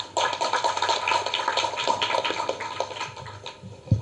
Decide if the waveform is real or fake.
real